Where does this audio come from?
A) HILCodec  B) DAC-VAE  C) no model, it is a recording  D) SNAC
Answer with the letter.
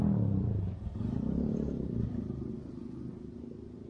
C